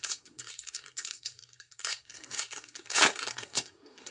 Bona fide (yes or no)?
no